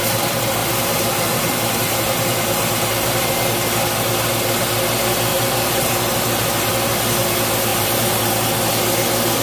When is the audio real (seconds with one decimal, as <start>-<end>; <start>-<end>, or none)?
0.0-0.6; 3.1-5.3; 6.7-7.7; 8.7-9.4